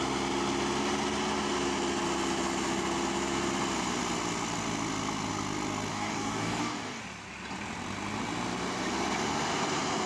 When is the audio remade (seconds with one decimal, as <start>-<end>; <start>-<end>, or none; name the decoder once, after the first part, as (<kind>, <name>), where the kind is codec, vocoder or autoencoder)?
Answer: 5.9-7.0 (codec, DAC)